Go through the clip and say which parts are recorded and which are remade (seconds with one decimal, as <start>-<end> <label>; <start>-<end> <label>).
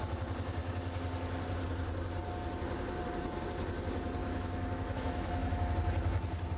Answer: 0.0-4.2 recorded; 4.2-5.7 remade; 5.7-6.6 recorded